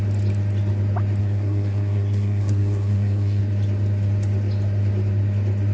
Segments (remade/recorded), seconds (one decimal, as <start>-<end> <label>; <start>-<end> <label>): 0.0-1.2 recorded; 1.2-3.4 remade; 3.4-5.7 recorded